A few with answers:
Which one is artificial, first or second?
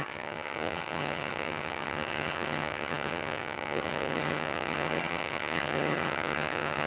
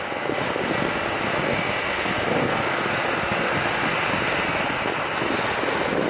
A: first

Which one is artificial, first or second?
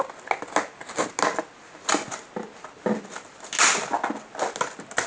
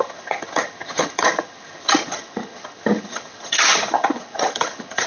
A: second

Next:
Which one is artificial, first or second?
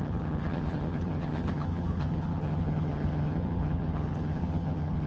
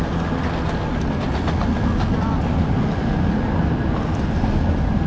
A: first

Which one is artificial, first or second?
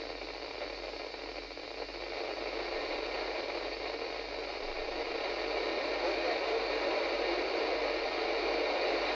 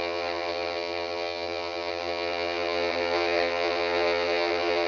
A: second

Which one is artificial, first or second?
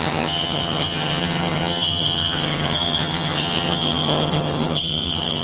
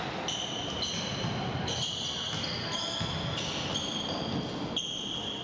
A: first